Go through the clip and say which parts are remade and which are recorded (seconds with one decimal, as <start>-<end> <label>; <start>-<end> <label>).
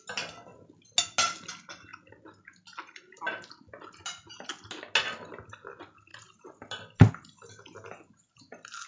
0.0-8.9 recorded